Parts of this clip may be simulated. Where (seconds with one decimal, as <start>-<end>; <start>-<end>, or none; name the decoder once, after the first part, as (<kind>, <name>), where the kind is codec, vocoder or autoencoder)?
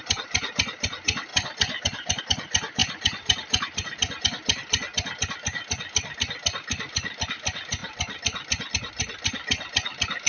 1.3-2.2 (vocoder, BigVGAN v2); 7.8-8.7